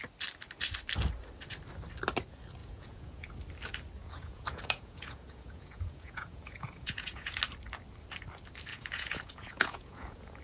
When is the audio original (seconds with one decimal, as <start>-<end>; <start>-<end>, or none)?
0.0-2.6; 3.3-4.0; 7.4-8.7